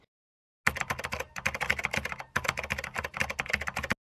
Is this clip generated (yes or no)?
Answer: no